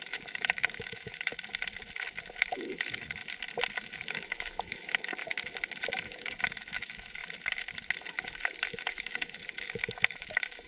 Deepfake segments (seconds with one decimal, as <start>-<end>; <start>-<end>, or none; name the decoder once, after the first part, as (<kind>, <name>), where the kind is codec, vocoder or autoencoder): 0.0-1.3 (autoencoder, DAC-VAE); 2.4-3.2; 3.9-5.2; 5.9-7.2; 8.1-10.7